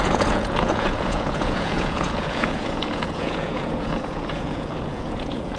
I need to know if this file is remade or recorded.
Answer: remade